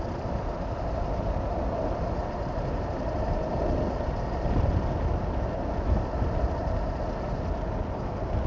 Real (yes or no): yes